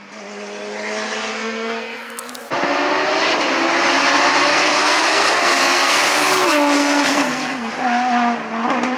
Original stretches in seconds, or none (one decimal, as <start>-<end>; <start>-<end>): 0.0-1.3; 2.3-4.5; 7.7-9.0